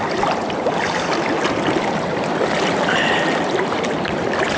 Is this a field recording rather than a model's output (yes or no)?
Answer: yes